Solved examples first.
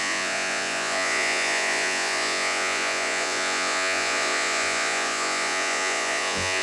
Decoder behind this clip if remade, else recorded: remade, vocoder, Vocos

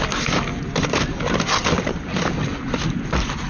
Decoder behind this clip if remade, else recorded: recorded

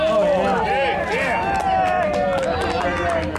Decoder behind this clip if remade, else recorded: recorded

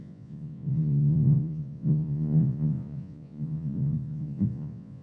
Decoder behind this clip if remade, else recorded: remade, vocoder, Vocos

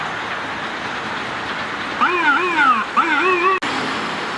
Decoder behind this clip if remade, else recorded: recorded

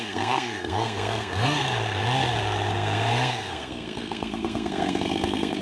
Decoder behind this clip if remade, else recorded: remade, codec, SNAC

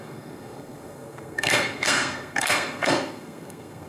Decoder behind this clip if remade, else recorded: remade, codec, SNAC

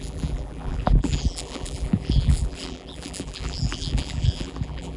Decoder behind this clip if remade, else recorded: remade, vocoder, BigVGAN v2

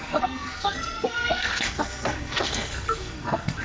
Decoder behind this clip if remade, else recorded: remade, codec, SNAC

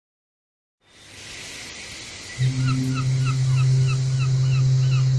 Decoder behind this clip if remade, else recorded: recorded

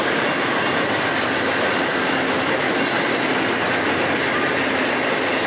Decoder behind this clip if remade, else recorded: recorded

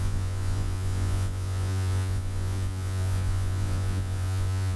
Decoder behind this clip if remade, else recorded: remade, vocoder, Vocos